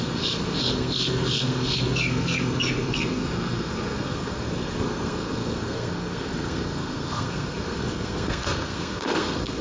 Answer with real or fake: fake